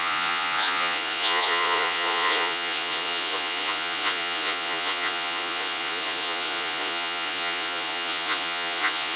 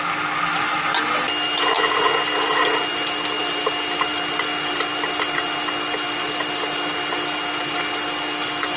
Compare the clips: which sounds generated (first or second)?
first